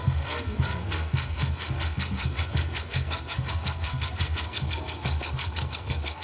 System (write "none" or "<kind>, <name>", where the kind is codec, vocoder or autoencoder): codec, SNAC